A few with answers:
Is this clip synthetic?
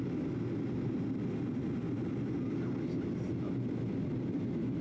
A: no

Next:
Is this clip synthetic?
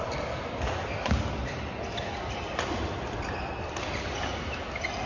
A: no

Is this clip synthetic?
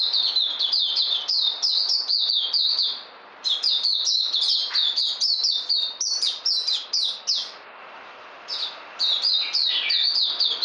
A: no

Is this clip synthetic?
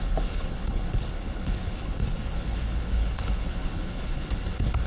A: yes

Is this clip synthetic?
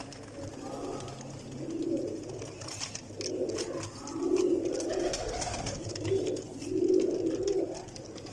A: no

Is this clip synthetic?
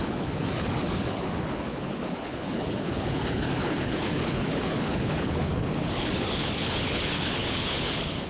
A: yes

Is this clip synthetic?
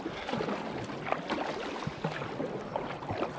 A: no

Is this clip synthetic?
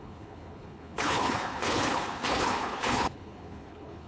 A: yes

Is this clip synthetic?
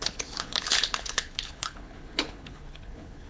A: yes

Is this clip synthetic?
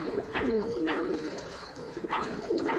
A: yes